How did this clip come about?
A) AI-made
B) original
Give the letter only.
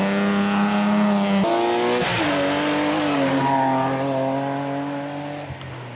B